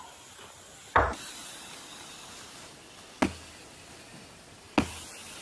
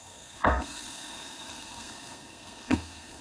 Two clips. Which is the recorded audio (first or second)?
first